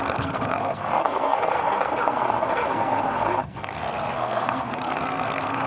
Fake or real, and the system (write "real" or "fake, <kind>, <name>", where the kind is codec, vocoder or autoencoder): fake, codec, SNAC